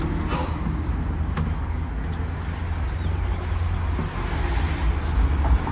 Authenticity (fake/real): real